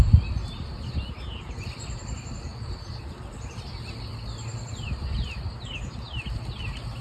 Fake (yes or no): no